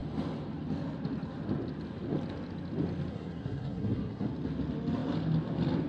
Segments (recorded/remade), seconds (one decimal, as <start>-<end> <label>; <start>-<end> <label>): 0.0-3.1 recorded; 3.1-4.3 remade; 4.3-5.9 recorded